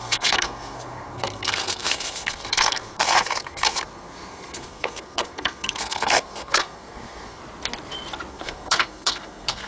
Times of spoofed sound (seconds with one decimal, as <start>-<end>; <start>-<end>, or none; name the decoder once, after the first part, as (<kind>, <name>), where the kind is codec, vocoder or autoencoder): 0.0-7.4 (codec, SNAC); 8.3-9.7